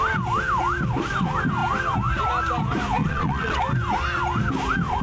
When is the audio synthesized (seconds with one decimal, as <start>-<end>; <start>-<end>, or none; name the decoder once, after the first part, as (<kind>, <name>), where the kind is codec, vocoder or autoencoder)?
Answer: 3.0-3.6 (vocoder, WaveNeXt)